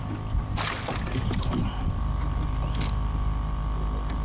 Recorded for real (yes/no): yes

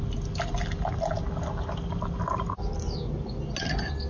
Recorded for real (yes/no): yes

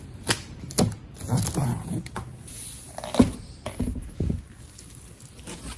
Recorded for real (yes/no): yes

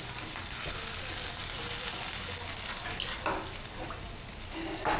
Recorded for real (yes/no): yes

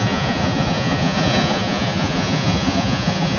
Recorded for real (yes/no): no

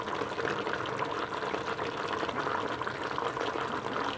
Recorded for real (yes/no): yes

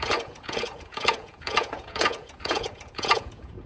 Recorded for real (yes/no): no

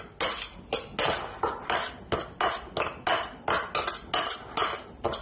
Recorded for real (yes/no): yes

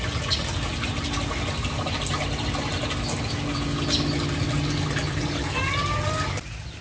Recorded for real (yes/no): yes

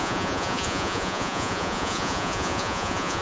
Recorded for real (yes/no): no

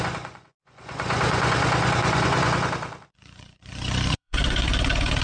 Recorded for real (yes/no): no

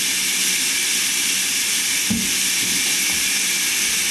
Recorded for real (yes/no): yes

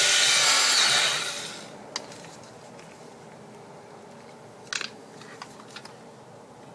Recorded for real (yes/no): yes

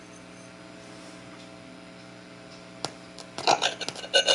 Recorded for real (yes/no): yes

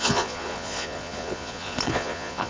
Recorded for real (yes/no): no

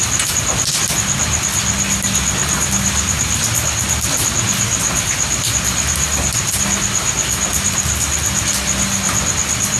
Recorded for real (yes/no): yes